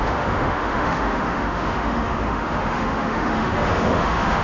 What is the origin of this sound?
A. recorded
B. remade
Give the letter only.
B